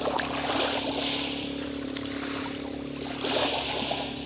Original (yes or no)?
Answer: no